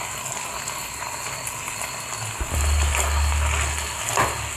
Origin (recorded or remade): recorded